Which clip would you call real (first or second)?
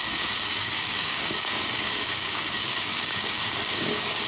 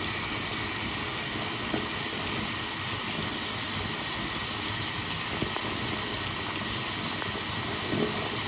second